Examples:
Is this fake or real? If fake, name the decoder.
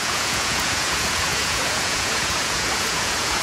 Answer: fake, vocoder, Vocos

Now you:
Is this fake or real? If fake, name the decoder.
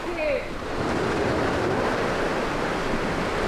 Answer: real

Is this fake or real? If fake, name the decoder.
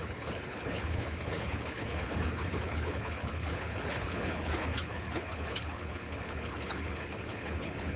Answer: fake, codec, HILCodec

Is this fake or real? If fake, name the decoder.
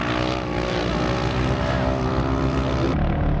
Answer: real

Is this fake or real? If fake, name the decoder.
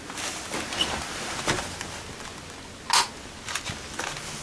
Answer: real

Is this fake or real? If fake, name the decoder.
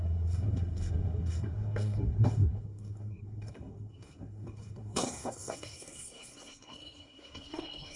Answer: fake, codec, SNAC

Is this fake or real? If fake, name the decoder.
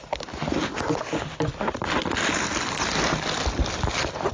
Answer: real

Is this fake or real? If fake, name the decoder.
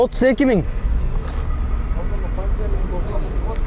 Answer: real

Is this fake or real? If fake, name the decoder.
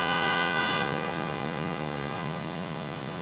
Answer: fake, vocoder, Vocos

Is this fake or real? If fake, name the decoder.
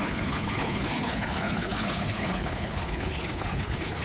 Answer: fake, codec, HILCodec